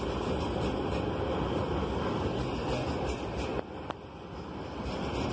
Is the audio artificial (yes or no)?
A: no